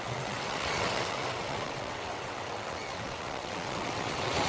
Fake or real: fake